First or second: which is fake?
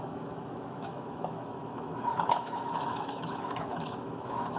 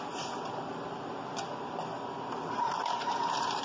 first